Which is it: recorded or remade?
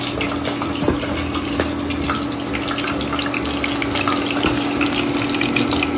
recorded